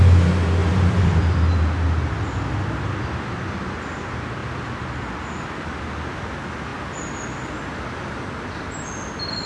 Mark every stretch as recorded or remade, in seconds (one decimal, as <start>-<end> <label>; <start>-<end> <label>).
0.0-0.6 recorded; 0.6-1.2 remade; 1.2-4.4 recorded; 4.4-5.0 remade; 5.0-9.5 recorded